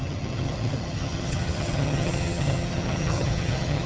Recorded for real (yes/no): no